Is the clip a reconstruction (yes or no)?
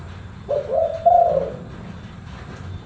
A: no